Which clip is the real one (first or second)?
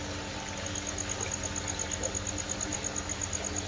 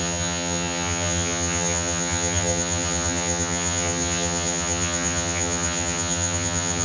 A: first